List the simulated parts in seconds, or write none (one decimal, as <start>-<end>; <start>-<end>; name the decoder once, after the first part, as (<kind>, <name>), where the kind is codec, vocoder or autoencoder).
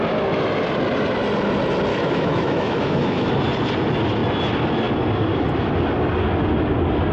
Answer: 1.9-3.3 (autoencoder, DAC-VAE)